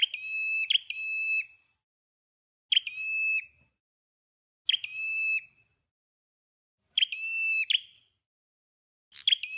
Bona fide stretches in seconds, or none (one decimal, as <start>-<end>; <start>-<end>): 0.0-9.6